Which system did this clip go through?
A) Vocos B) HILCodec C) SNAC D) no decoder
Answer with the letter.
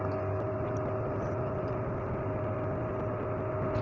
D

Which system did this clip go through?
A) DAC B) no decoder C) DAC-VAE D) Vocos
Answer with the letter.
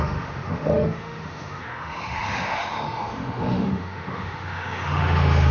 C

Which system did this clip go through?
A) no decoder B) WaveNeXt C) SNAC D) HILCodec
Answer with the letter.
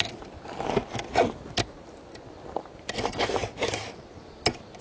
A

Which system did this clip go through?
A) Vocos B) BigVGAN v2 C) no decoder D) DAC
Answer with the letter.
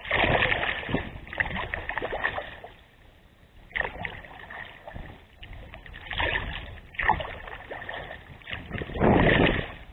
C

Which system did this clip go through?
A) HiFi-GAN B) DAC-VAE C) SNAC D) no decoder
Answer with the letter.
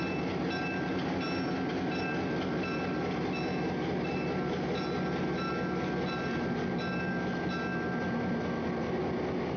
D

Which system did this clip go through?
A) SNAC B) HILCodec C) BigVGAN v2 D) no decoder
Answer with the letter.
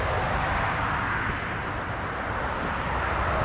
D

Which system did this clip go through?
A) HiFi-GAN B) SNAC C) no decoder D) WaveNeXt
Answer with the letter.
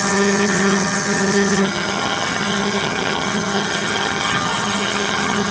A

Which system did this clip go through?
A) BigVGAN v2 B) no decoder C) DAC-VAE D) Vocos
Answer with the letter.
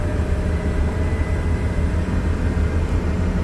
A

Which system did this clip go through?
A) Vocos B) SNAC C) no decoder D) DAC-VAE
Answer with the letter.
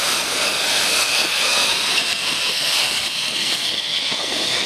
B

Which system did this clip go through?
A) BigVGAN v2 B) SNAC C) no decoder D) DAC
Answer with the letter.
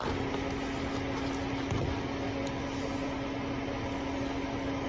C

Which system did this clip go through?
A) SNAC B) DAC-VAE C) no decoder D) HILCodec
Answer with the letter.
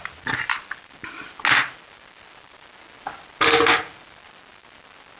C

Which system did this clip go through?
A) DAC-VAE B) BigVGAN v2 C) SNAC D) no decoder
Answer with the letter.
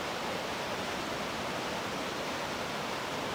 D